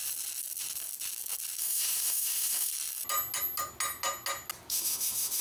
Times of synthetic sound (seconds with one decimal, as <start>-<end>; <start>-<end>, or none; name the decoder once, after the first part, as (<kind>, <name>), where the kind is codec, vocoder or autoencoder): 1.6-2.7 (autoencoder, DAC-VAE); 4.7-5.4